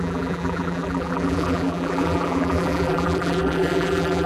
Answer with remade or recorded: remade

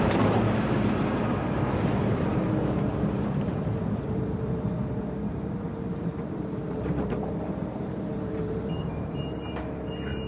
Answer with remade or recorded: remade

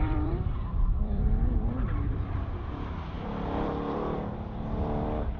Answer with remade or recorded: remade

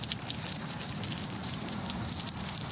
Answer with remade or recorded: remade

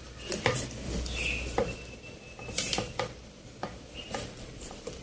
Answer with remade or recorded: remade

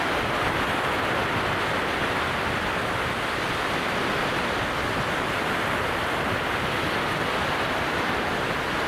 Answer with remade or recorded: recorded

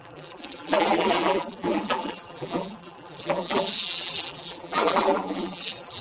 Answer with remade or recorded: remade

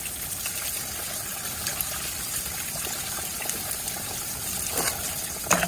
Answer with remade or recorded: recorded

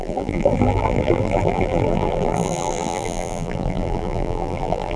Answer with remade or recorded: remade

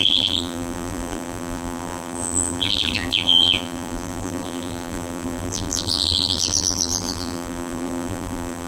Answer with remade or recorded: remade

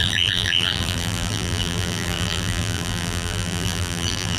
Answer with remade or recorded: remade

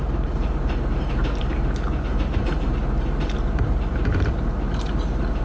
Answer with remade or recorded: remade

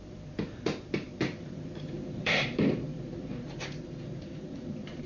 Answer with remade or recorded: remade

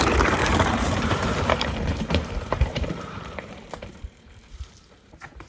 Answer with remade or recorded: remade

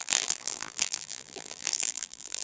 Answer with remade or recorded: remade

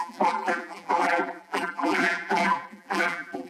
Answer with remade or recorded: remade